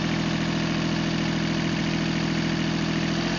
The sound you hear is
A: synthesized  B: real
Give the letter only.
B